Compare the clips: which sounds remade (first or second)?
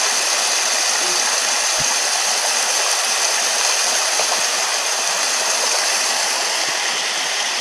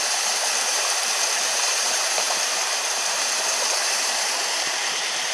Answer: second